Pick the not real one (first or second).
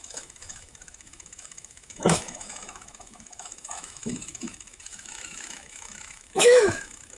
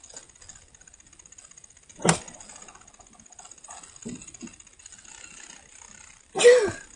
first